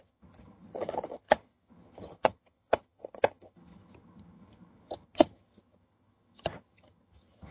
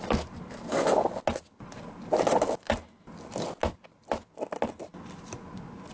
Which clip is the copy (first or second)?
first